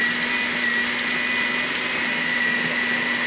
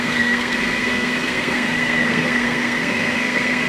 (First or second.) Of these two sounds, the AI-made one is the second